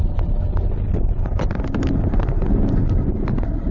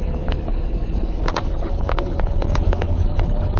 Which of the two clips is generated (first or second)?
second